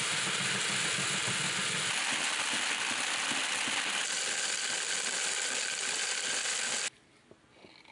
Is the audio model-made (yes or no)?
no